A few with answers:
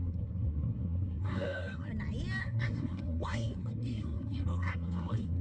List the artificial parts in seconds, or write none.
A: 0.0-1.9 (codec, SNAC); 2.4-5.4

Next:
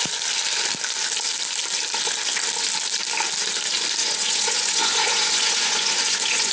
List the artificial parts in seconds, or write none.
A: 4.0-6.5 (vocoder, Vocos)

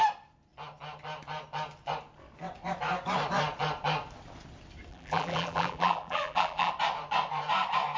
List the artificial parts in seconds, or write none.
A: 4.9-6.7 (vocoder, BigVGAN v2)

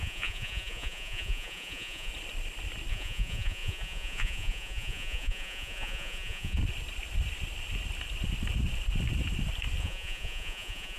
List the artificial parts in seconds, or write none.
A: 0.0-2.1 (vocoder, Vocos); 2.9-6.6; 9.8-11.0

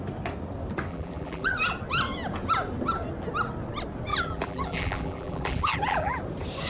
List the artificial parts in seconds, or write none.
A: 0.9-1.5 (vocoder, BigVGAN v2); 4.1-6.2